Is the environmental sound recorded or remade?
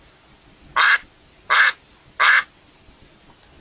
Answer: recorded